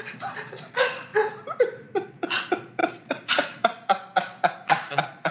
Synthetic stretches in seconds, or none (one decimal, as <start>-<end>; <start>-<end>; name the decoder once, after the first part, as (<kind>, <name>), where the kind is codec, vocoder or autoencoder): 0.0-1.1 (vocoder, Vocos); 2.1-5.3